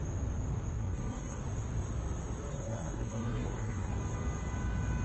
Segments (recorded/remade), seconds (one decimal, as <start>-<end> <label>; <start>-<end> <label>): 0.0-0.8 recorded; 0.8-1.4 remade; 1.4-2.5 recorded; 2.5-3.9 remade; 3.9-5.0 recorded